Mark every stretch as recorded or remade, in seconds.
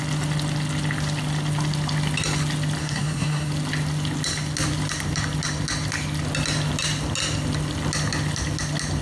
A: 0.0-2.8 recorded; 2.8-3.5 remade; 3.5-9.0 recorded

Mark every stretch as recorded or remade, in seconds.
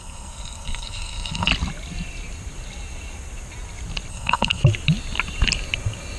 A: 0.0-1.5 remade; 1.5-4.1 recorded; 4.1-4.6 remade; 4.6-6.2 recorded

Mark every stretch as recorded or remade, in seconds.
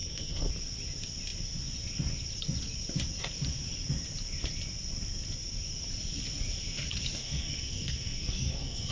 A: 0.0-0.5 remade; 0.5-7.2 recorded; 7.2-8.9 remade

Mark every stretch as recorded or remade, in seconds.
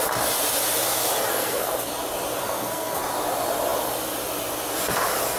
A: 0.0-1.3 recorded; 1.3-1.9 remade; 1.9-2.3 recorded; 2.3-3.0 remade; 3.0-5.4 recorded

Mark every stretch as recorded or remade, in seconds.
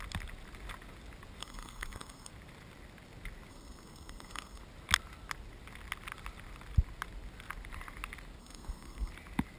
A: 0.0-1.4 recorded; 1.4-2.3 remade; 2.3-3.5 recorded; 3.5-4.6 remade; 4.6-8.4 recorded; 8.4-9.1 remade; 9.1-9.6 recorded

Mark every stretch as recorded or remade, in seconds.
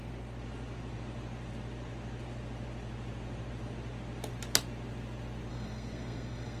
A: 0.0-5.5 recorded; 5.5-6.6 remade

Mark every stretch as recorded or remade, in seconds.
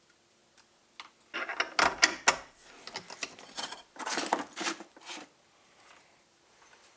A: 0.0-7.0 recorded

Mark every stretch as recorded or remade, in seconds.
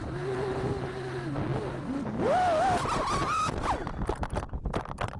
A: 0.0-5.2 recorded